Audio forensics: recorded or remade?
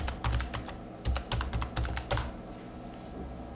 recorded